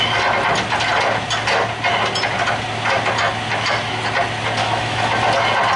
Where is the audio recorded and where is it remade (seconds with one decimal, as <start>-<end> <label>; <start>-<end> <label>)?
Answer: 0.0-4.6 recorded; 4.6-5.2 remade; 5.2-5.8 recorded